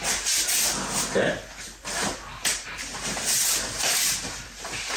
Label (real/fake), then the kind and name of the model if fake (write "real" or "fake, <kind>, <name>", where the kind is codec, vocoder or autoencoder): real